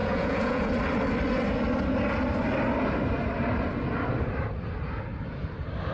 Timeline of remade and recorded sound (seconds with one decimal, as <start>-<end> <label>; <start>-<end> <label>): 0.0-0.7 remade; 0.7-5.9 recorded